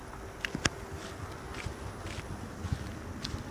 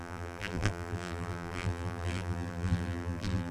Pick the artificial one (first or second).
second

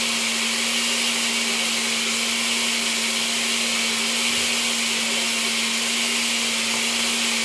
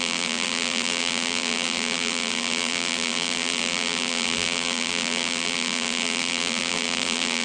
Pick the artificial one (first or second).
second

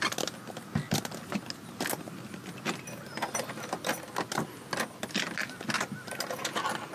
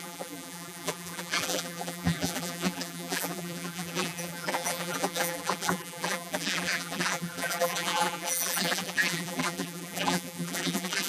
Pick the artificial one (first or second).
second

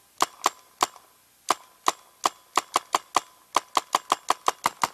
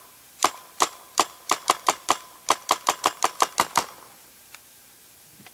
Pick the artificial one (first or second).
second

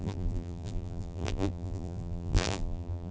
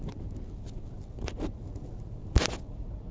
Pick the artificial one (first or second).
first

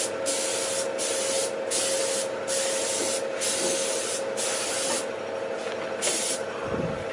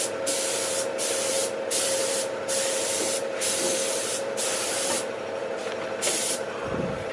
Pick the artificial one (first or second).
second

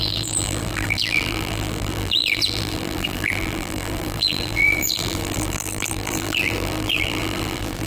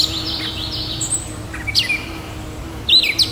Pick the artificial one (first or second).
first